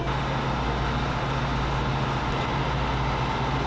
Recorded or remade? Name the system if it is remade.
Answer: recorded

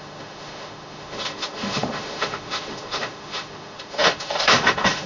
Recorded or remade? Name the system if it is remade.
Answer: remade, autoencoder, DAC-VAE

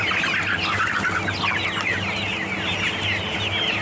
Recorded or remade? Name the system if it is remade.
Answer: recorded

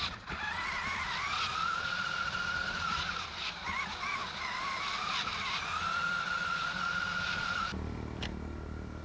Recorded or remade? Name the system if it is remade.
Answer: recorded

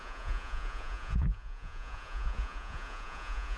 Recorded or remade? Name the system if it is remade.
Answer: remade, vocoder, Vocos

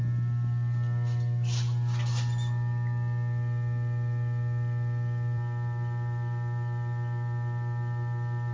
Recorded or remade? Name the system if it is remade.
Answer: recorded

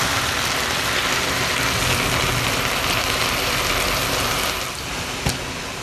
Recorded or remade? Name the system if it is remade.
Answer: recorded